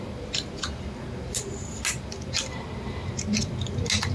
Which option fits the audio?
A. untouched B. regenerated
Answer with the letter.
A